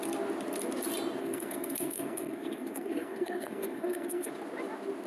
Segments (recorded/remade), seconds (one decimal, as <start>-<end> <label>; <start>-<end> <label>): 0.0-1.2 recorded; 1.2-4.3 remade; 4.3-5.1 recorded